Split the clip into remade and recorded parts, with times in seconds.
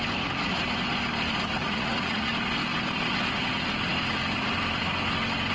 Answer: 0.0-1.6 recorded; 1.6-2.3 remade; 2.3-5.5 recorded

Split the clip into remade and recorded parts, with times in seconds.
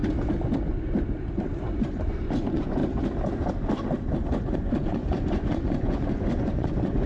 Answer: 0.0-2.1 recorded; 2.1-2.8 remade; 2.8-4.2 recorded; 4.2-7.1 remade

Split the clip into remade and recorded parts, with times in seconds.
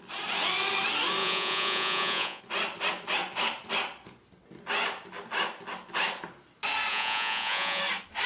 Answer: 0.0-1.2 recorded; 1.2-2.4 remade; 2.4-6.9 recorded; 6.9-7.8 remade; 7.8-8.3 recorded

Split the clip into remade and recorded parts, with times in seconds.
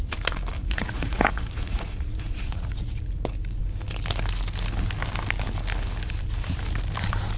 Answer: 0.0-0.6 recorded; 0.6-3.0 remade; 3.0-7.4 recorded